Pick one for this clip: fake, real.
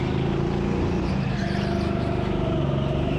real